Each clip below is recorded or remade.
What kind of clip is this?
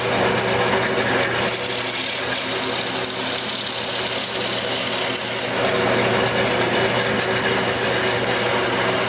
recorded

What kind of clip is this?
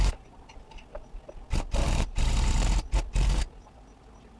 recorded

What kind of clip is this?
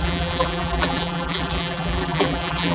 remade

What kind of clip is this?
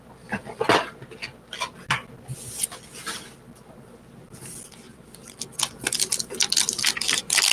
recorded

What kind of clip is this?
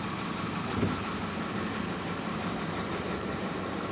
remade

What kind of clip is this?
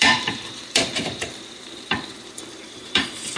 remade